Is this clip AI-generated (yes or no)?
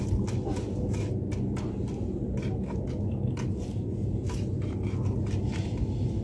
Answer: no